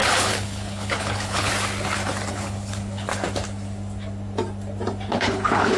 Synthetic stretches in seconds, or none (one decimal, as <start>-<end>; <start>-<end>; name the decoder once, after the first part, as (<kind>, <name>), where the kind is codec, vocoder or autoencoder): 0.0-1.5 (codec, HILCodec); 2.3-3.1; 5.1-5.8